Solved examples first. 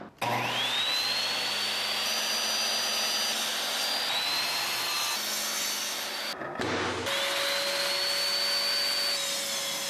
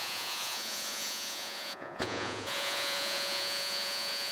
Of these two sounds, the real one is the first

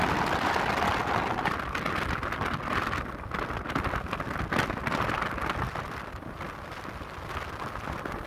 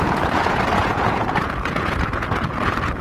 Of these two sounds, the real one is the first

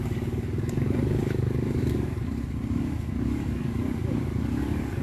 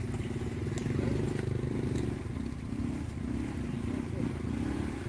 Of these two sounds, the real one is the second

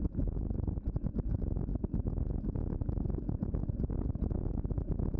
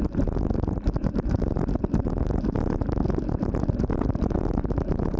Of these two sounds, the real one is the first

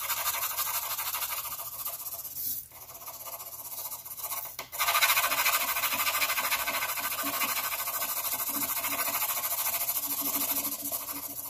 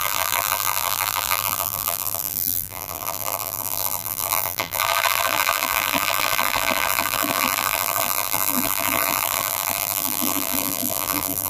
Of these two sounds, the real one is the first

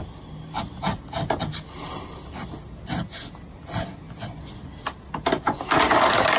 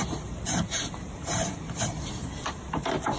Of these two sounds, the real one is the first